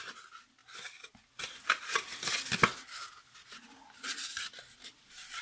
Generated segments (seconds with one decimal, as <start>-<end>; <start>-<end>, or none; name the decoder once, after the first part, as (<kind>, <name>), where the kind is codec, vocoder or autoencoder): none